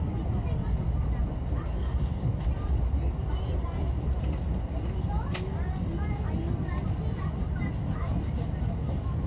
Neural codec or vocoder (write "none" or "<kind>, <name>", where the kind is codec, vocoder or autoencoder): none